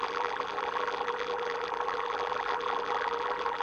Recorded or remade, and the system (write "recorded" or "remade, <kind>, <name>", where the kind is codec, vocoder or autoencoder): remade, vocoder, BigVGAN v2